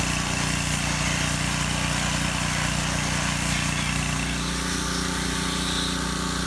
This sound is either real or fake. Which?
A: real